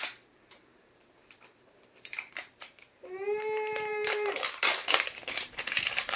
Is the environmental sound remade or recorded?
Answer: remade